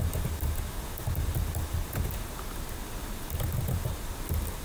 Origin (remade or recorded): recorded